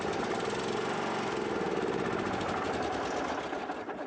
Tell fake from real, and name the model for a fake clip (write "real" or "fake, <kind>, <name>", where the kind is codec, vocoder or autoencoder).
real